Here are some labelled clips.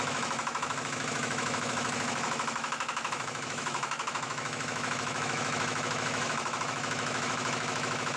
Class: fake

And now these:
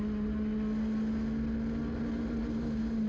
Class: real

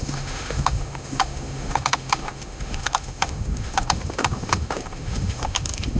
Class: fake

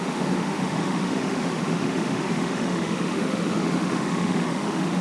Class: fake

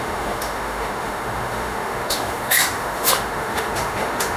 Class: fake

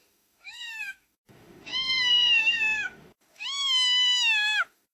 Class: fake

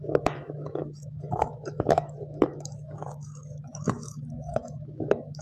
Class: fake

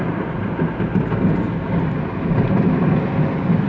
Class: real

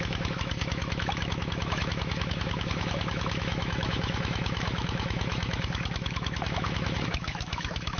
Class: fake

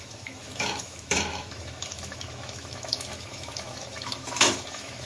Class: fake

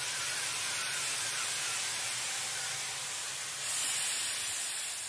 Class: real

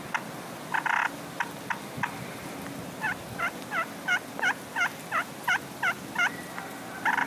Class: real